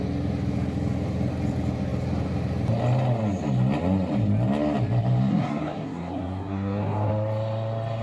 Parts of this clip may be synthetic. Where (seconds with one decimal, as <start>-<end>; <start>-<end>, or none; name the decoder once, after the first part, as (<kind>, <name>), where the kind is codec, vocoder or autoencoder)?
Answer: 5.3-7.1 (codec, SNAC)